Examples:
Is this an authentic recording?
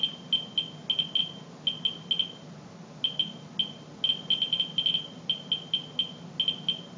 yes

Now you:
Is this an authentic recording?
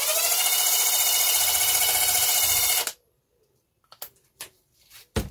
no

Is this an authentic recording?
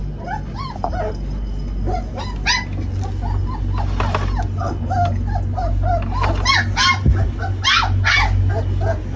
yes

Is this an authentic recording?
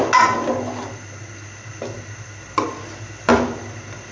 yes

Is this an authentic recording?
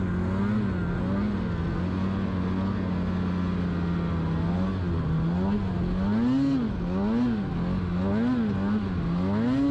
yes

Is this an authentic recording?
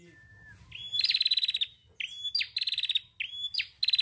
yes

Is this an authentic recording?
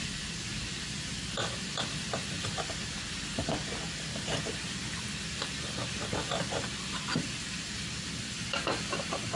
yes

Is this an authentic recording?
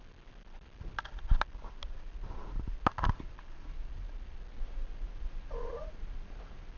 yes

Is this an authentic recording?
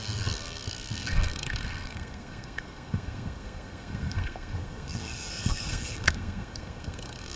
no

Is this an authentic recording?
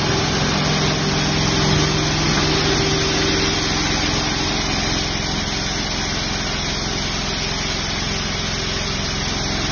yes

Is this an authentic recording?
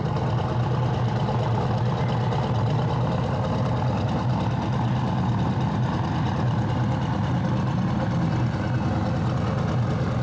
yes